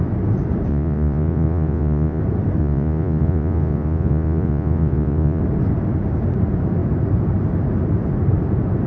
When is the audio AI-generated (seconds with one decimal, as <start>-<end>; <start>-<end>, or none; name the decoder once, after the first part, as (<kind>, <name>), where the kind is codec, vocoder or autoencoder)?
0.7-2.2 (vocoder, Vocos); 2.6-5.4